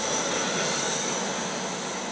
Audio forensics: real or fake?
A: real